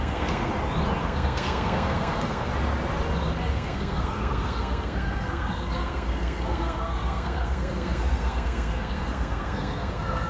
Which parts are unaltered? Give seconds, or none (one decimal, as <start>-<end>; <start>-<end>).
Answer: 0.5-1.0; 2.5-3.5